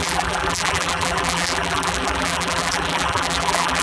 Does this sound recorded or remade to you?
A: remade